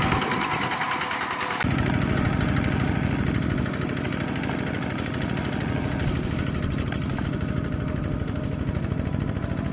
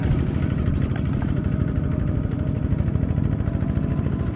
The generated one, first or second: second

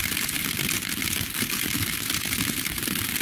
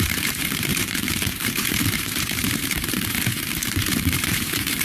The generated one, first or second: second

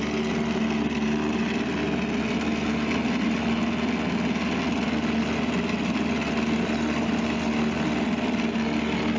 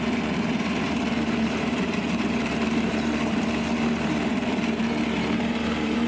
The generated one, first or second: second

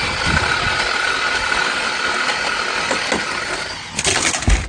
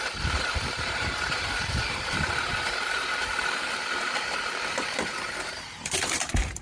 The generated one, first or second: second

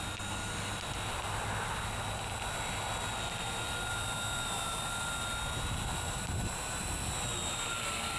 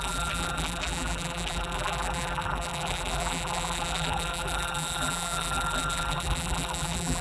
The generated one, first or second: second